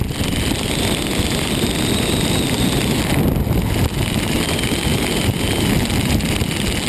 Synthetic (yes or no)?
no